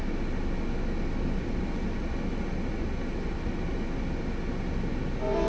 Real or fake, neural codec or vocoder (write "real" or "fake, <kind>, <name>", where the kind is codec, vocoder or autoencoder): real